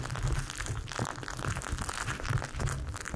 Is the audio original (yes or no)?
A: yes